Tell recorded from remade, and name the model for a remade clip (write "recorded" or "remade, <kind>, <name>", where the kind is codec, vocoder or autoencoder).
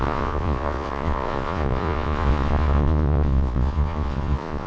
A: remade, vocoder, Vocos